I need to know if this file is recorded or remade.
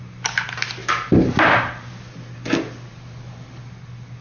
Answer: recorded